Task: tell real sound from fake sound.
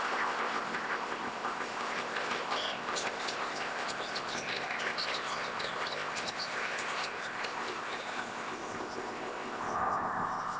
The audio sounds fake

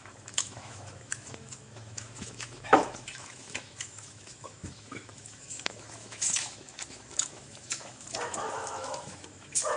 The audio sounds fake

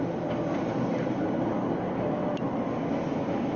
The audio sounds real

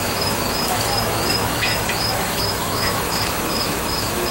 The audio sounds fake